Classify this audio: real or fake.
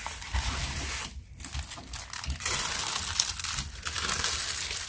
real